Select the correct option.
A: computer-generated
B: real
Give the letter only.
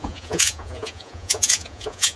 A